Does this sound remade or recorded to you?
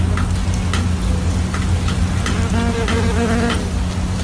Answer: recorded